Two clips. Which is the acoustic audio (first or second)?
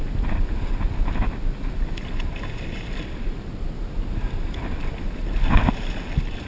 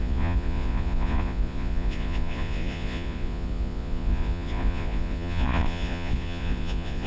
first